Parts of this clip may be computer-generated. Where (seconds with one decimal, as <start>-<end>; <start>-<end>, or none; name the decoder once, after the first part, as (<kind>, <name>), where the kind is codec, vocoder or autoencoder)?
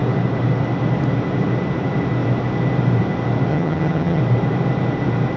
3.5-4.2 (vocoder, HiFi-GAN)